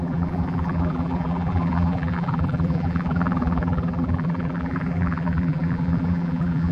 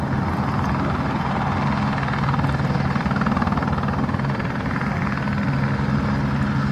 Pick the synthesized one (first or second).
first